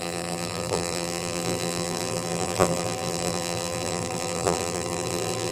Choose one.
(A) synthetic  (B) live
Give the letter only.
A